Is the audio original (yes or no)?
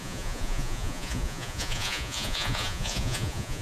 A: no